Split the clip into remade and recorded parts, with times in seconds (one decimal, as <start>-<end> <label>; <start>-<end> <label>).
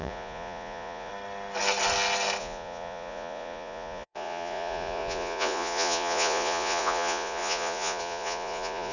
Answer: 0.0-1.1 remade; 1.1-2.4 recorded; 2.4-8.9 remade